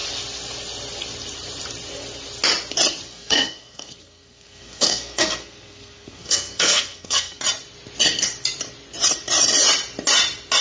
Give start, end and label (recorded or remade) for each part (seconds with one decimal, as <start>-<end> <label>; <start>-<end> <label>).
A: 0.0-3.1 recorded; 3.1-7.4 remade; 7.4-10.6 recorded